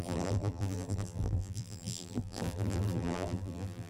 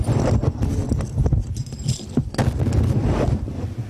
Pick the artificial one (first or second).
first